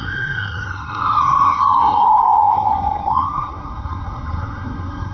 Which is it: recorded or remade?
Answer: remade